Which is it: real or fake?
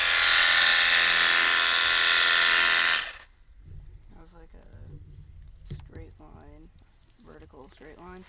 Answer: real